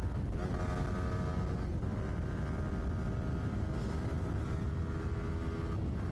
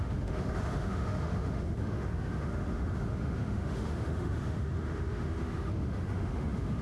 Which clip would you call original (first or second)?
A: first